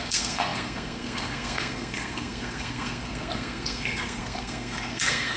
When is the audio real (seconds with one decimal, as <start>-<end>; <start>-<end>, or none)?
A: none